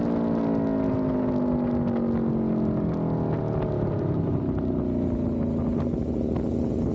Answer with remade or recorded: recorded